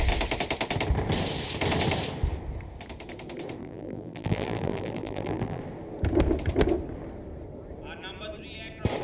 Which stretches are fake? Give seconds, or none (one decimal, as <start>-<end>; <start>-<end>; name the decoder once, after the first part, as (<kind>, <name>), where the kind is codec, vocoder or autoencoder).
3.6-5.6 (vocoder, BigVGAN v2)